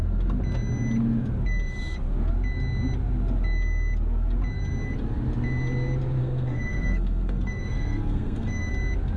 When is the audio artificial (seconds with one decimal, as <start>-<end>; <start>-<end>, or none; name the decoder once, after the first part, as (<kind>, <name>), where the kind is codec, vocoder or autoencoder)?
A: 6.2-8.7 (codec, SNAC)